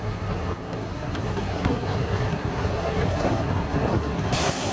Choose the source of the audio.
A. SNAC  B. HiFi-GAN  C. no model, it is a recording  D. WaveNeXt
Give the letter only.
A